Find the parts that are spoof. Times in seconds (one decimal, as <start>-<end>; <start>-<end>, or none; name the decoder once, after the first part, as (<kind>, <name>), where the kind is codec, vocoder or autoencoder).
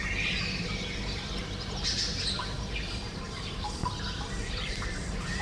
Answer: 0.0-3.8 (vocoder, BigVGAN v2); 4.5-5.4